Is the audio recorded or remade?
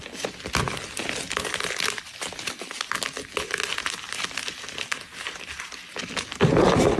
recorded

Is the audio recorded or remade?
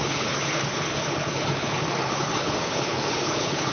remade